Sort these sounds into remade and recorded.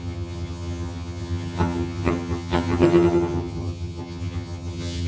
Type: remade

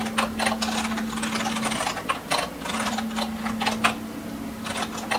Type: remade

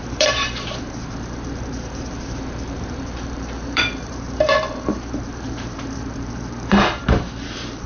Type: remade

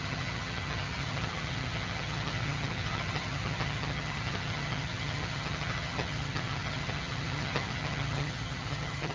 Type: remade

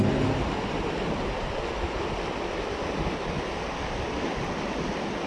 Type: recorded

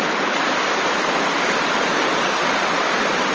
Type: recorded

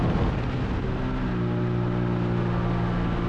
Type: recorded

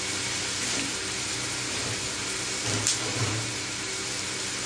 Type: recorded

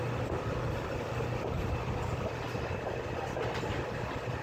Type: recorded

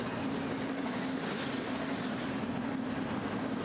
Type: recorded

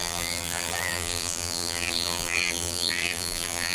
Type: remade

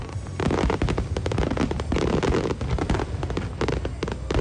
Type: recorded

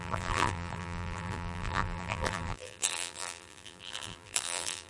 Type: remade